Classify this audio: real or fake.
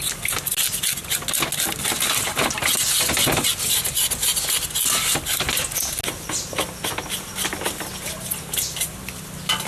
real